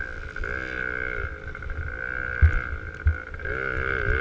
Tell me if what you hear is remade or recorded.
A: recorded